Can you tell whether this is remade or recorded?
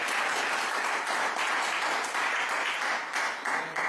recorded